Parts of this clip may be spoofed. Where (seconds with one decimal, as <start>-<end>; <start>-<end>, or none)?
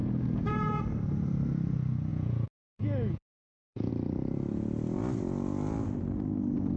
0.0-0.8; 2.1-3.9